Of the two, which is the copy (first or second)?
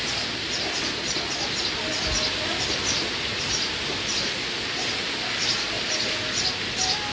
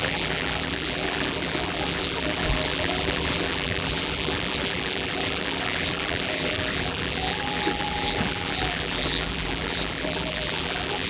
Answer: second